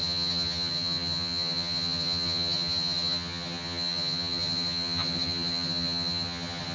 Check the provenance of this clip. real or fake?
fake